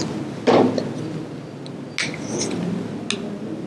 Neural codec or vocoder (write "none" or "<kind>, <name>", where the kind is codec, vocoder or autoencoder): none